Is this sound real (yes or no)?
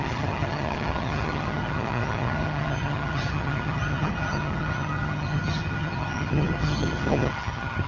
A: no